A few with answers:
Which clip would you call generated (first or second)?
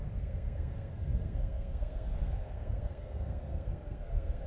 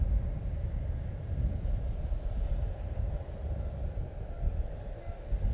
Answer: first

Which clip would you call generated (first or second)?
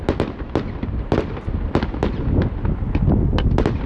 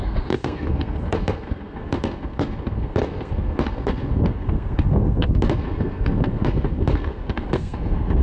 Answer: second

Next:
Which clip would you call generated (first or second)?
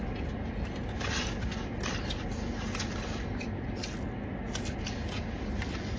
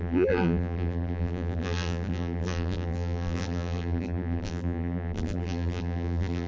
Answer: second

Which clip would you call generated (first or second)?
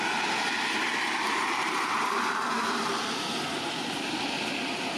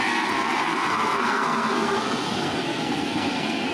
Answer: second